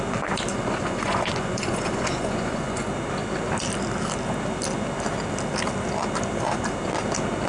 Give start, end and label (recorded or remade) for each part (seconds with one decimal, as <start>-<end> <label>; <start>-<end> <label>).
0.0-0.5 recorded; 0.5-2.9 remade; 2.9-7.5 recorded